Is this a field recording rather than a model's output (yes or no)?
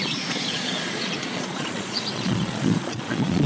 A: no